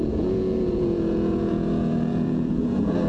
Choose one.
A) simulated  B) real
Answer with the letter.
A